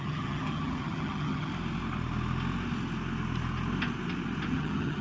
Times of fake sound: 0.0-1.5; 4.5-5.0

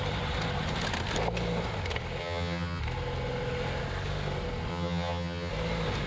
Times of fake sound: 2.2-2.8; 4.7-5.5

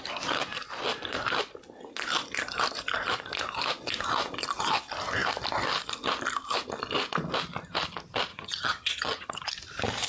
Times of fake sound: 8.3-9.5

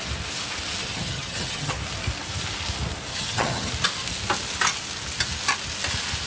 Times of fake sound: 0.8-1.7; 3.1-3.7

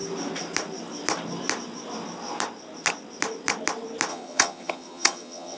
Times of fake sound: 4.1-5.6

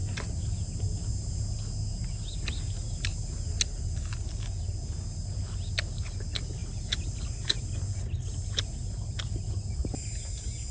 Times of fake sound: none

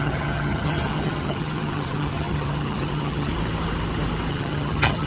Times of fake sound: 0.0-3.3; 4.3-5.1

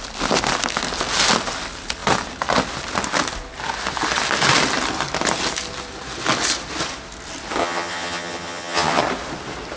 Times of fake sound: 7.6-9.0